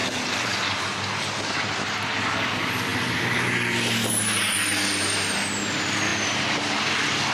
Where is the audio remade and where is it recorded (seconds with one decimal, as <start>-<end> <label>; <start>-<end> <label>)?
0.0-7.3 recorded